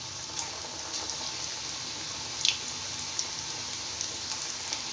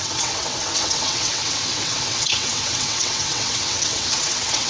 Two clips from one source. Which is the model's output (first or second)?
second